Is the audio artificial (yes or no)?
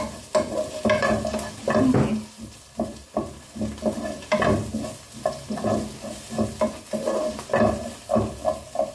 no